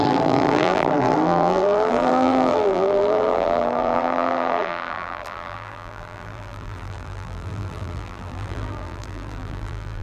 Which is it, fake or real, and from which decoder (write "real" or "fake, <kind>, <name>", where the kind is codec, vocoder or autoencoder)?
fake, vocoder, BigVGAN v2